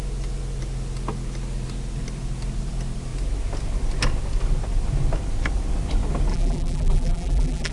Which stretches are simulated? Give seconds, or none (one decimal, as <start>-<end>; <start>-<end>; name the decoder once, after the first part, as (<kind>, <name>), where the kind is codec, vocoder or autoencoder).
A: 6.3-7.7 (vocoder, BigVGAN v2)